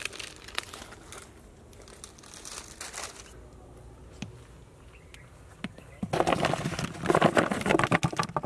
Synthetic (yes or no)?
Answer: no